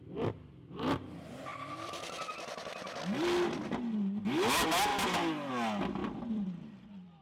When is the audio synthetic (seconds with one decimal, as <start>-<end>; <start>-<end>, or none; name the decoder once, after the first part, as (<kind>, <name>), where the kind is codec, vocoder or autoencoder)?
1.5-2.3 (vocoder, BigVGAN v2); 4.9-5.5; 6.0-7.2